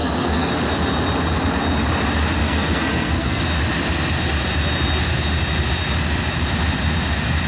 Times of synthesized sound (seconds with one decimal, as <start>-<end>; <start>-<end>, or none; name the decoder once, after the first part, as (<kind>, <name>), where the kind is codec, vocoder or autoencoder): 0.0-0.5 (codec, SNAC); 2.4-3.4